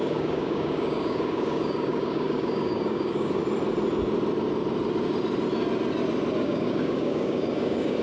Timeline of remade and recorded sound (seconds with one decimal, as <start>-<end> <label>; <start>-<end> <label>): 0.0-3.4 remade; 3.4-6.4 recorded; 6.4-8.0 remade